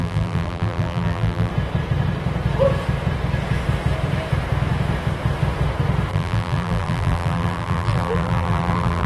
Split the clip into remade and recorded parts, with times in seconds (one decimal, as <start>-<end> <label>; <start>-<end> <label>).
0.0-1.5 remade; 1.5-6.1 recorded; 6.1-9.1 remade